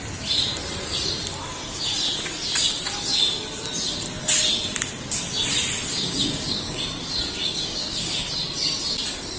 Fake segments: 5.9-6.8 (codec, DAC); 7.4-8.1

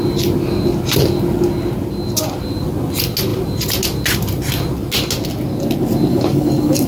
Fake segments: 6.1-6.9 (codec, DAC)